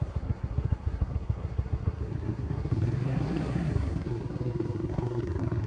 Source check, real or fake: fake